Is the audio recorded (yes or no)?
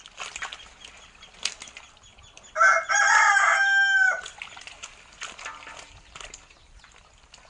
yes